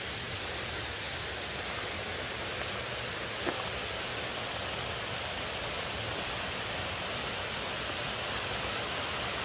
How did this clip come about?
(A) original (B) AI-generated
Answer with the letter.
A